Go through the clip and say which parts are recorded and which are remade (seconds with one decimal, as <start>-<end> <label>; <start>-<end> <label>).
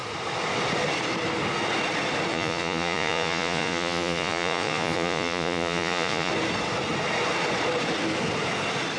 0.0-2.3 recorded; 2.3-6.3 remade; 6.3-9.0 recorded